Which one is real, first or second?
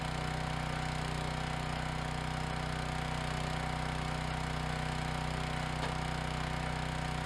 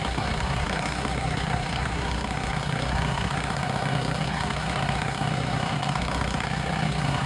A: first